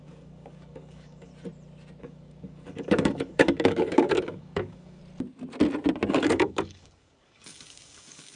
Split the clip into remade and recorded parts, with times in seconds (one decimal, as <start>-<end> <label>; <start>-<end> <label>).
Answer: 0.0-1.3 remade; 1.3-2.0 recorded; 2.0-5.0 remade; 5.0-6.1 recorded; 6.1-8.4 remade

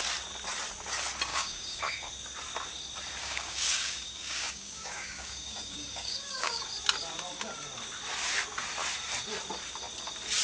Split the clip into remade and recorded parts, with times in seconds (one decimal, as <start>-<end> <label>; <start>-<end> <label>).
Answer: 0.0-1.3 recorded; 1.3-2.1 remade; 2.1-3.2 recorded; 3.2-6.7 remade; 6.7-10.4 recorded

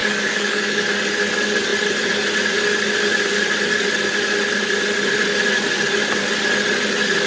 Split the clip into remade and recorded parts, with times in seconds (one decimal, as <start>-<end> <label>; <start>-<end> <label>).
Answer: 0.0-0.8 remade; 0.8-7.3 recorded